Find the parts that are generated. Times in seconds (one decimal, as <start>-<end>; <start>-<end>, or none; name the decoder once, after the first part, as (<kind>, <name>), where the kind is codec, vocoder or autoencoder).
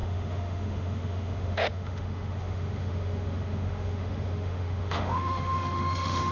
0.0-6.3 (autoencoder, DAC-VAE)